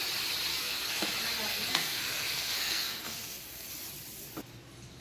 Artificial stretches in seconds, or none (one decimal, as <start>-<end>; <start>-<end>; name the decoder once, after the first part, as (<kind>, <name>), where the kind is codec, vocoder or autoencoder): 0.5-1.1 (codec, SNAC); 1.5-3.7